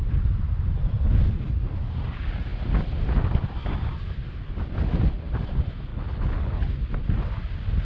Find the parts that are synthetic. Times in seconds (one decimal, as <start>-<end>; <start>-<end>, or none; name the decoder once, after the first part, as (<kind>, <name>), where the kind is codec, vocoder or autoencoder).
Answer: 5.9-6.5 (codec, HILCodec)